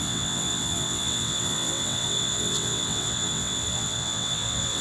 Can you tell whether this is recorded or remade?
remade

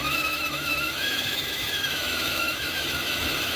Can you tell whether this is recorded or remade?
remade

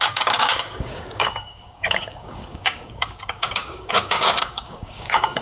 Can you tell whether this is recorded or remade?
remade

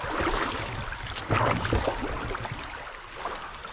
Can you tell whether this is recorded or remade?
recorded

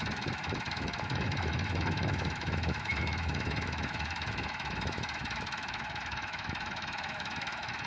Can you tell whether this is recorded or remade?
remade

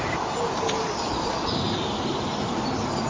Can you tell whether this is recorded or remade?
remade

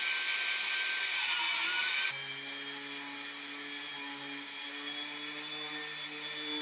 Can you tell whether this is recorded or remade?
recorded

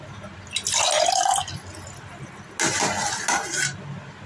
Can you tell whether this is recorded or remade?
recorded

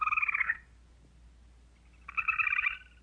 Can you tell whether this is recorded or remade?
recorded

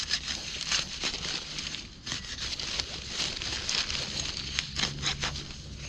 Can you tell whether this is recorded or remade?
recorded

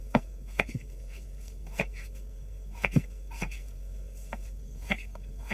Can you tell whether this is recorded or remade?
remade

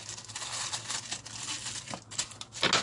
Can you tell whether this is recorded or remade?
recorded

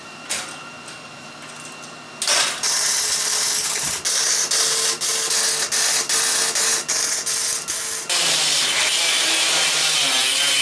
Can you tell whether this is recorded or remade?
recorded